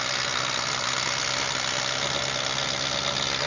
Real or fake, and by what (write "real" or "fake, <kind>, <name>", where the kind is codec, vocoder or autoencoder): real